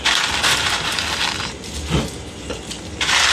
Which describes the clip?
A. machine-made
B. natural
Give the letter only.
B